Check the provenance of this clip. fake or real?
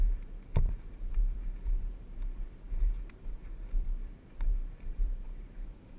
fake